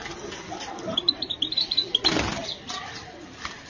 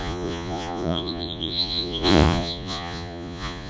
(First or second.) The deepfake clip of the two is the second